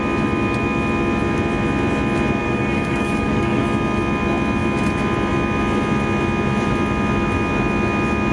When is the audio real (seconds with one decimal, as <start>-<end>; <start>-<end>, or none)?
0.0-2.4; 3.6-8.3

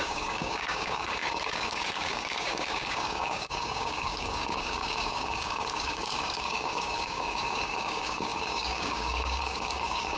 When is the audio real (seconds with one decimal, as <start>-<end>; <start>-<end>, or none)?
none

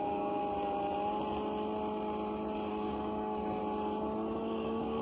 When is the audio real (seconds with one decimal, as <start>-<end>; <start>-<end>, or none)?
0.4-2.7; 3.6-4.4

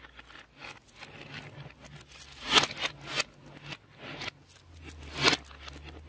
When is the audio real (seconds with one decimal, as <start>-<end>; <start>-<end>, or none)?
0.0-6.1

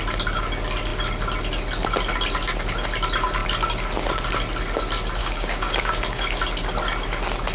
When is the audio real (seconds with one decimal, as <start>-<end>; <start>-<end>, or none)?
0.0-5.2; 6.4-7.5

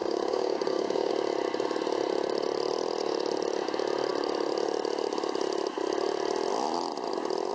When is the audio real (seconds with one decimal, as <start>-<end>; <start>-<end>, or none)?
1.1-7.5